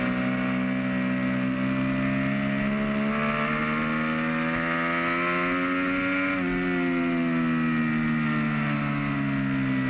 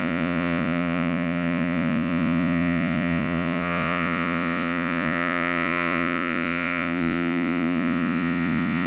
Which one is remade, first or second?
second